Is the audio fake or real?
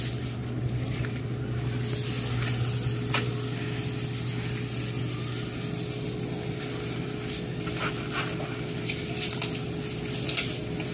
real